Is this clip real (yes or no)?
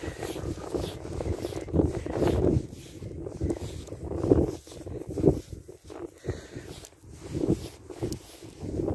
yes